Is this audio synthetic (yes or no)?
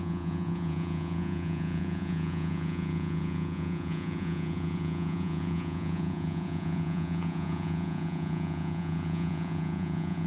yes